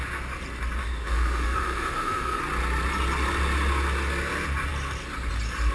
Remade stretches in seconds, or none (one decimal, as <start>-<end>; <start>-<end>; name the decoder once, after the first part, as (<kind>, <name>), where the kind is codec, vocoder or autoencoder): 0.8-2.4 (autoencoder, DAC-VAE)